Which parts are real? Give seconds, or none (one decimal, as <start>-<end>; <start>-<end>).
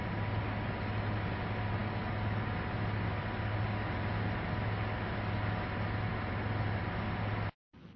0.0-8.0